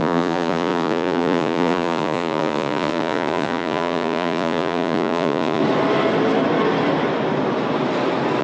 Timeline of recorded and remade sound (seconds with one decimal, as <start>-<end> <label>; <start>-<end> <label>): 0.0-5.6 remade; 5.6-8.4 recorded